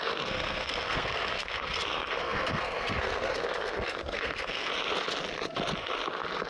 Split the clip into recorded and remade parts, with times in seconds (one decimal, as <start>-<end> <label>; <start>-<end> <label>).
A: 0.0-4.7 remade; 4.7-6.5 recorded